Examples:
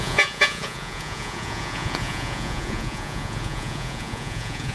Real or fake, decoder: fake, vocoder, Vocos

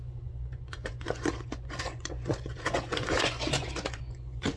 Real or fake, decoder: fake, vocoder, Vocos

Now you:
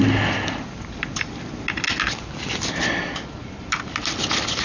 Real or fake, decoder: real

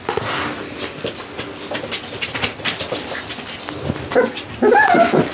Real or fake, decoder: real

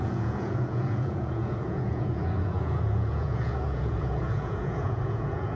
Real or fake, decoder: fake, vocoder, Vocos